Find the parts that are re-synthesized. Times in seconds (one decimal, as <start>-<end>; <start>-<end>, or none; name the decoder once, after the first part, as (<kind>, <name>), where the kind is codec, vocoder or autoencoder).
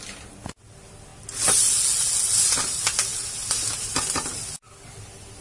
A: none